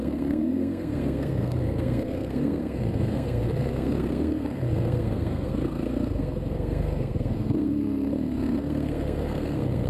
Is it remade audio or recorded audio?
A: remade